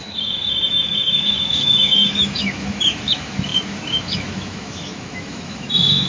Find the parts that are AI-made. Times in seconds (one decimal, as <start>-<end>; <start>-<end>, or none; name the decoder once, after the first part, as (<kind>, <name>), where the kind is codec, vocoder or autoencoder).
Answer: 0.0-6.1 (autoencoder, DAC-VAE)